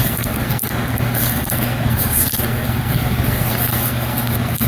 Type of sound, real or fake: fake